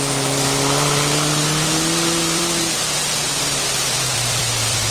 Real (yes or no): no